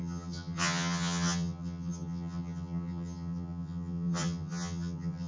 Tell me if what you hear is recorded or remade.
remade